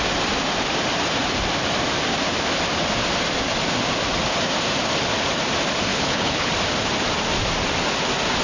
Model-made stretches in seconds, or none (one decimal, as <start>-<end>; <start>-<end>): 5.9-6.5